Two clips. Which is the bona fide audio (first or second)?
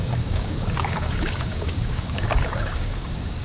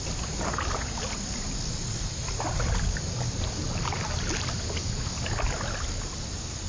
second